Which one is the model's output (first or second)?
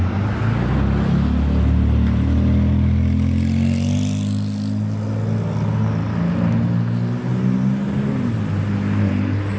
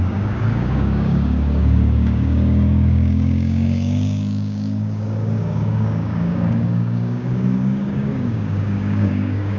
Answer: second